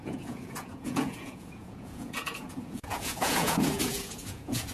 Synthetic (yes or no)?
yes